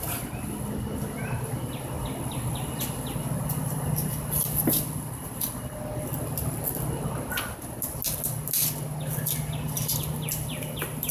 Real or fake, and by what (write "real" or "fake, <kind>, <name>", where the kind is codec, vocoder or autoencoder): real